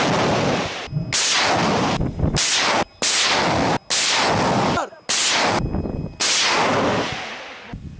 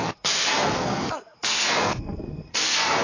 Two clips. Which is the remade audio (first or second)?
second